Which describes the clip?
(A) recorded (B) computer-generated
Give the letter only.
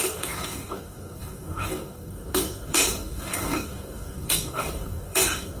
B